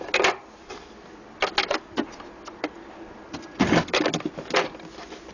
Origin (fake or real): real